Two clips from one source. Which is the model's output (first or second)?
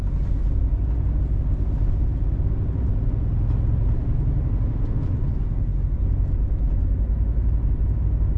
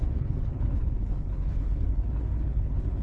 second